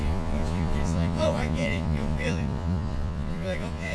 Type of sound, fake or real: fake